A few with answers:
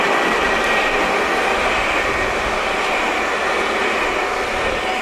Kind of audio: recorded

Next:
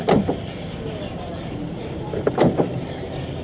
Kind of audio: recorded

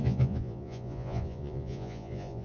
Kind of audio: remade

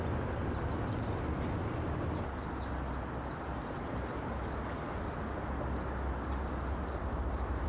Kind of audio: remade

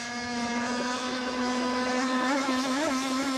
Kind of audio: remade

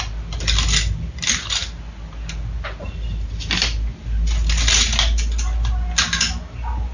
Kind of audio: recorded